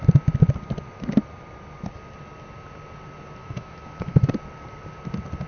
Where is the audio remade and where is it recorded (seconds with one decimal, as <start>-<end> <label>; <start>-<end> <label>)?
0.0-3.4 recorded; 3.4-4.3 remade; 4.3-5.5 recorded